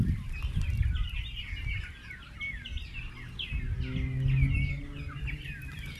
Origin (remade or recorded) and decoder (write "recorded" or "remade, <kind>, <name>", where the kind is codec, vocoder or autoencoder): recorded